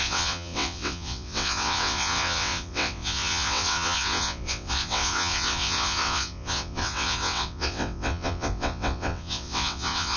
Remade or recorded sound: remade